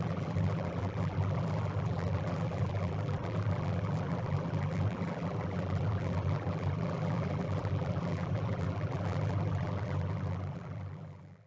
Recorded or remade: remade